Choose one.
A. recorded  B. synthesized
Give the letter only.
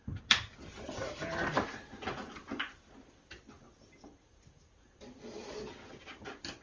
A